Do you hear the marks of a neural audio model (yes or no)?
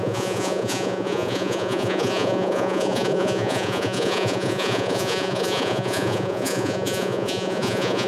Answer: yes